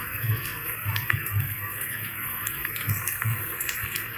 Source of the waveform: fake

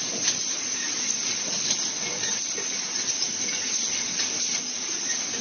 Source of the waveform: real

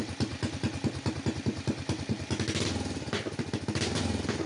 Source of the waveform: real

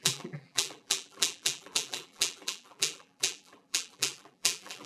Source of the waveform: fake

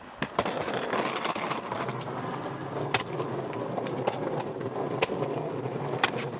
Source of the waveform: real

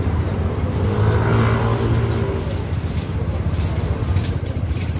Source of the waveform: real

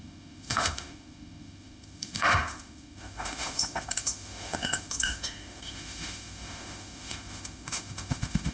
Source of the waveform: fake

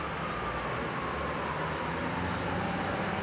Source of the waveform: real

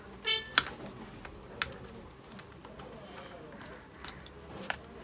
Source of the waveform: real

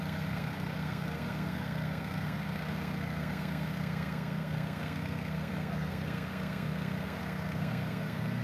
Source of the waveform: fake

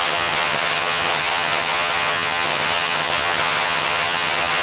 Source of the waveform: fake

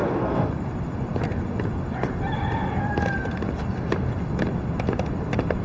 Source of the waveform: real